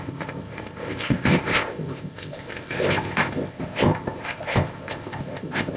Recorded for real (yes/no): no